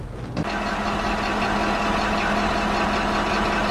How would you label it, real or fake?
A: real